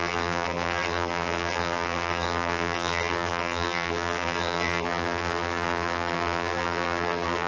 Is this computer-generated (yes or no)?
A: yes